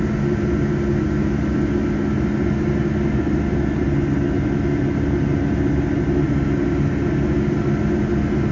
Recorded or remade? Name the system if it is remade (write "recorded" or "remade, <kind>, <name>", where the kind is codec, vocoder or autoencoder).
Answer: recorded